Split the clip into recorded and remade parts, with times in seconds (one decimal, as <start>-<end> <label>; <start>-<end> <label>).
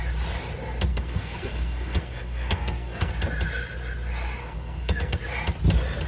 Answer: 0.0-0.9 recorded; 0.9-3.1 remade; 3.1-4.4 recorded; 4.4-5.2 remade; 5.2-6.1 recorded